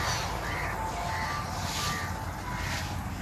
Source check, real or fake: real